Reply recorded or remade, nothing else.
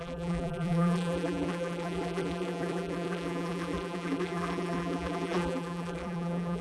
remade